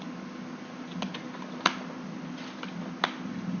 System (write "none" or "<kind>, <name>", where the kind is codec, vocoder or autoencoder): none